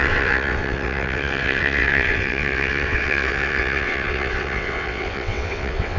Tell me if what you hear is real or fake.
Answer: fake